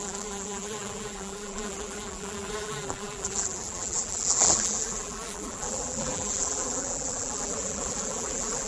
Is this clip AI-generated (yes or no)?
yes